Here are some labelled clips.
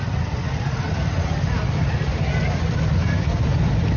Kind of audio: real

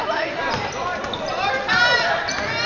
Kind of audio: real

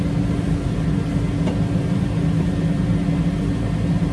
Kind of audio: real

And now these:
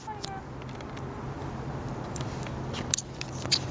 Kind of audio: real